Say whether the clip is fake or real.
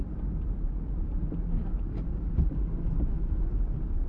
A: real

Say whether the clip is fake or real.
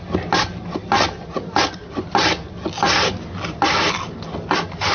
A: real